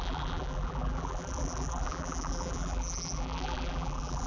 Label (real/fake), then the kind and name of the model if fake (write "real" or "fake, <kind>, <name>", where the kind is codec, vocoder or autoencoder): fake, vocoder, BigVGAN v2